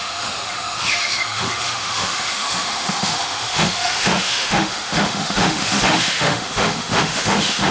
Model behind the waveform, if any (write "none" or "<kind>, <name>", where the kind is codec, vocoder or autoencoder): autoencoder, DAC-VAE